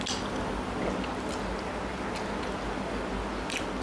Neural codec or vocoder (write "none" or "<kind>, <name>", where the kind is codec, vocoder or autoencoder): none